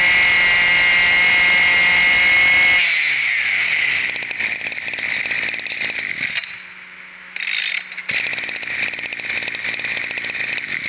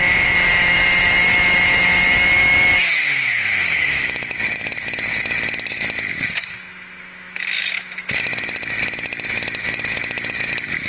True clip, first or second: first